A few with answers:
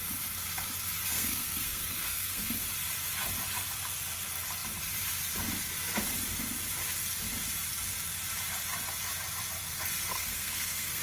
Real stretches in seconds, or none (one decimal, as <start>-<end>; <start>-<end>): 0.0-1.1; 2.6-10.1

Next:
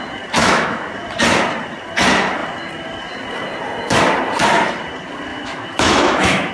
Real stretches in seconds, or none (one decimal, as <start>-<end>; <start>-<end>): 0.0-0.4; 0.9-5.3

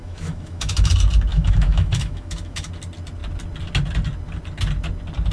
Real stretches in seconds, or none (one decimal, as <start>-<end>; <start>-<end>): 0.9-1.3; 2.7-5.3